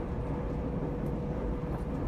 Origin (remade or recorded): recorded